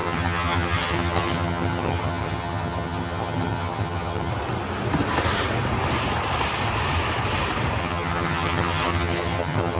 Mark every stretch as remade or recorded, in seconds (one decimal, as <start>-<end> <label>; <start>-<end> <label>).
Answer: 0.0-4.3 remade; 4.3-7.8 recorded; 7.8-9.8 remade